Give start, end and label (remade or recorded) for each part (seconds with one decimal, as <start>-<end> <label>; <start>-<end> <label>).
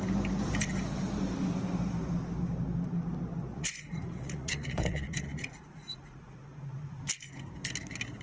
0.0-3.5 recorded; 3.5-6.8 remade; 6.8-8.2 recorded